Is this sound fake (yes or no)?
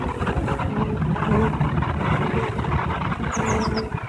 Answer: no